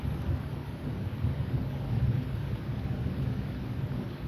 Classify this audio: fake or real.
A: fake